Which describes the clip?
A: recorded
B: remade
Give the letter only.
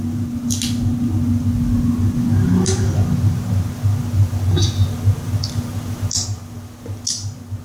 A